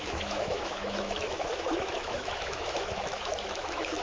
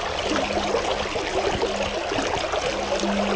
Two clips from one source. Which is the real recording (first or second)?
second